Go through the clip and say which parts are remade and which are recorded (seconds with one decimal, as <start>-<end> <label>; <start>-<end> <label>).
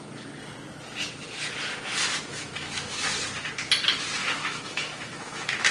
0.0-2.3 recorded; 2.3-3.1 remade; 3.1-4.2 recorded; 4.2-5.7 remade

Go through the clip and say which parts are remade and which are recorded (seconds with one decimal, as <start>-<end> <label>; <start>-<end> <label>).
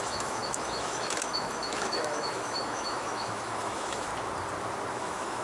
0.0-4.1 remade; 4.1-4.9 recorded; 4.9-5.4 remade